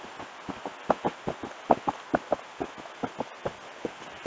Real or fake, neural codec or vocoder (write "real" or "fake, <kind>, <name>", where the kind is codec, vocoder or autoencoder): real